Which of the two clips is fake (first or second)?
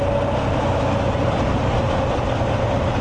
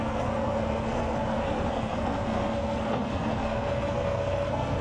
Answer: second